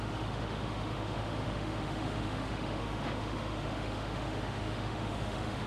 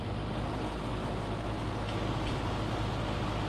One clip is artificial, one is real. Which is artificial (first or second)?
first